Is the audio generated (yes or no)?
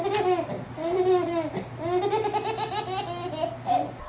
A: no